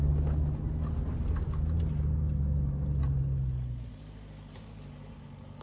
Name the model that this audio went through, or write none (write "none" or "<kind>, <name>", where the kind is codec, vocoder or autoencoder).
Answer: none